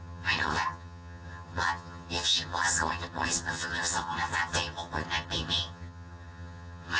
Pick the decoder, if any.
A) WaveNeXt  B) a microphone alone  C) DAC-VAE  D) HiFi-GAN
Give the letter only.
D